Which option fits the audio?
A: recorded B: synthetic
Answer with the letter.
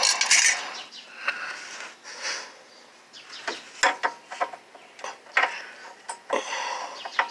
A